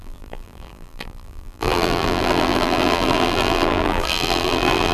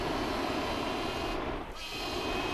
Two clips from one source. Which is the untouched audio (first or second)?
second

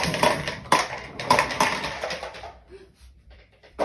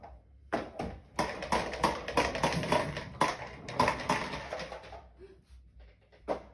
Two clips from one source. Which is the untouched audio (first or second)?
second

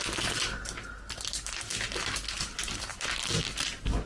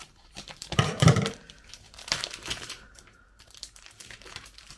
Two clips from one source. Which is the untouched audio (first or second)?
first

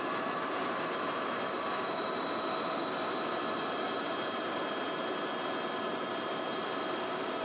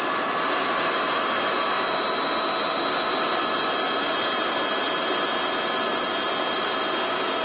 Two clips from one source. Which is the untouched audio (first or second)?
second